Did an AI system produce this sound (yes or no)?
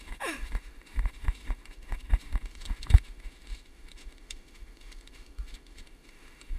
yes